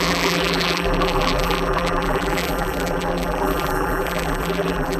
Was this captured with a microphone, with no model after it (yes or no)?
no